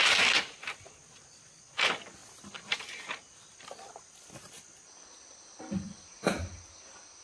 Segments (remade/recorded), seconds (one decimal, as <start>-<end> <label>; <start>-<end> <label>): 0.0-7.2 recorded